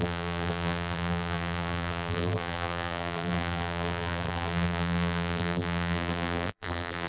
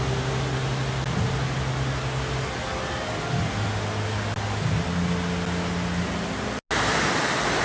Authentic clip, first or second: second